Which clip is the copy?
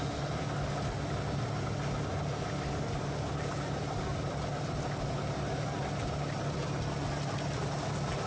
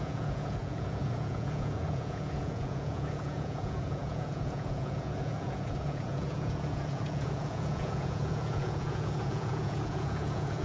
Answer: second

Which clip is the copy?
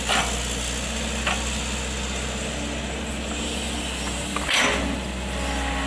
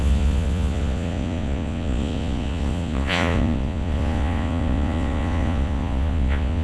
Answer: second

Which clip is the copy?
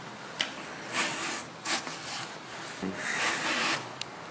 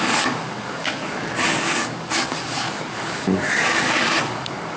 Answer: second